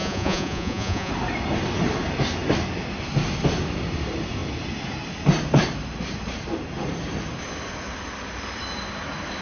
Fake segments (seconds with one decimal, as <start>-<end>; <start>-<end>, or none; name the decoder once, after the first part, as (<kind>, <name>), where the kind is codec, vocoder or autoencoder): 0.0-1.1 (vocoder, Vocos)